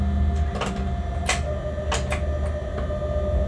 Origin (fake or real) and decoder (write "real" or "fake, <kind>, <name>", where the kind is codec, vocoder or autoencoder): real